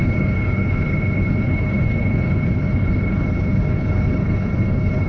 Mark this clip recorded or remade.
remade